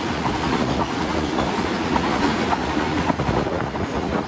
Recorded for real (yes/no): no